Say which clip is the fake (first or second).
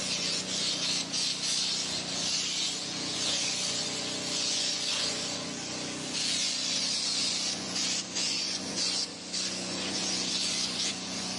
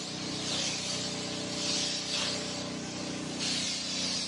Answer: first